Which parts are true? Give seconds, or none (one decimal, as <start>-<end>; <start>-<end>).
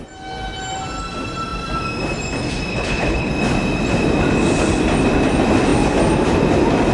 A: 0.0-2.7; 3.3-6.9